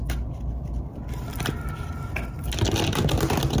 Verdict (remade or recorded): recorded